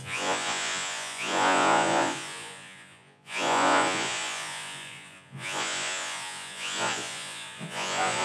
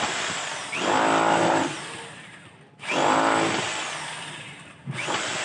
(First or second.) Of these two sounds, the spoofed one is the first